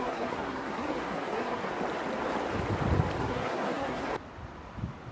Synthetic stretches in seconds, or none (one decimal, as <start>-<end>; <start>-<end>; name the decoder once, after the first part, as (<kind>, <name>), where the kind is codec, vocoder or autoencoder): 0.0-1.7 (codec, SNAC); 3.2-4.1